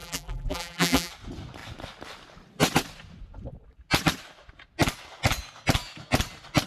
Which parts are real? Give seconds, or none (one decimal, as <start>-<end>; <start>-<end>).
1.1-6.7